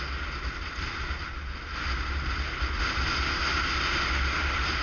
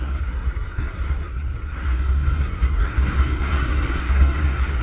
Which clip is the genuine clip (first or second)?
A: first